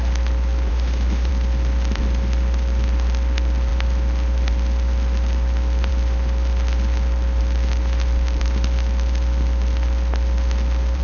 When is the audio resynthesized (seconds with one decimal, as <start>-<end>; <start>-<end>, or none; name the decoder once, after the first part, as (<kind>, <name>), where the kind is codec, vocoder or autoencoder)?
0.7-1.3 (autoencoder, DAC-VAE)